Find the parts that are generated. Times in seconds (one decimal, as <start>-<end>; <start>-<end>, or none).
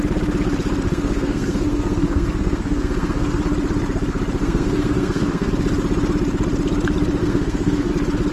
0.9-3.4; 4.4-5.5; 7.2-7.9